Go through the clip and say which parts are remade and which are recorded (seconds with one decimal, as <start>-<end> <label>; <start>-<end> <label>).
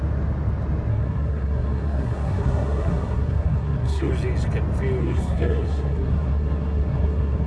0.0-0.9 recorded; 0.9-4.1 remade; 4.1-5.0 recorded; 5.0-7.5 remade